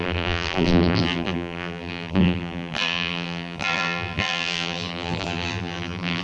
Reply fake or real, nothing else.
fake